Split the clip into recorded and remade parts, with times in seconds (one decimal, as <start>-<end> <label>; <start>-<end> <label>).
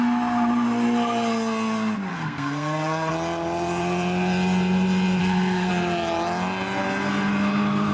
0.0-2.1 recorded; 2.1-3.1 remade; 3.1-5.2 recorded; 5.2-5.7 remade; 5.7-7.9 recorded